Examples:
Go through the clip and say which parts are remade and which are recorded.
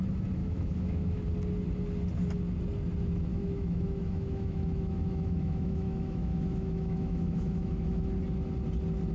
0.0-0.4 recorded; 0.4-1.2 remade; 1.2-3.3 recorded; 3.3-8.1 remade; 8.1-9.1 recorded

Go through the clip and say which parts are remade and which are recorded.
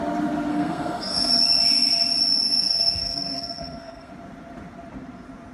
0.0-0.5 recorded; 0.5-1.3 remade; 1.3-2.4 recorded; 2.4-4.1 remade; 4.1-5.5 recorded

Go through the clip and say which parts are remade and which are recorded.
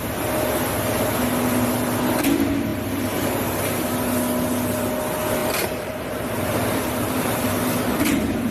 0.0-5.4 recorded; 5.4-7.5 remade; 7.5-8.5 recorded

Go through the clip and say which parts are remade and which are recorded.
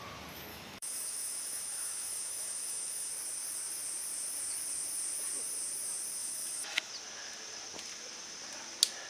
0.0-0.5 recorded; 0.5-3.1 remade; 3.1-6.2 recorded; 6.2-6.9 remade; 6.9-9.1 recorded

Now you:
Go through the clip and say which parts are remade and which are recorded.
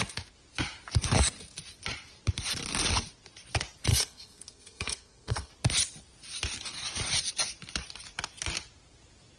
0.0-3.9 recorded; 3.9-5.5 remade; 5.5-9.4 recorded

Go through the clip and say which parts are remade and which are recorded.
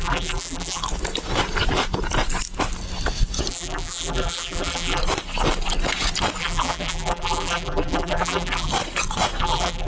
0.0-0.8 remade; 0.8-3.5 recorded; 3.5-5.0 remade; 5.0-6.4 recorded; 6.4-8.7 remade; 8.7-9.4 recorded; 9.4-9.9 remade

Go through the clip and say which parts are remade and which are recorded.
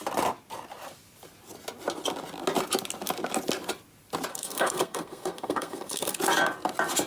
0.0-4.3 recorded; 4.3-6.2 remade; 6.2-7.1 recorded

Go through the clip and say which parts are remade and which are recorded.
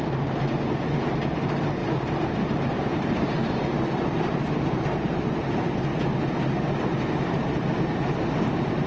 0.0-5.9 remade; 5.9-6.8 recorded; 6.8-8.9 remade